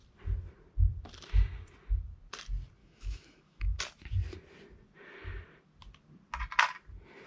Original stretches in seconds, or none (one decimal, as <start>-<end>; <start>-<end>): 0.0-2.8; 3.8-7.3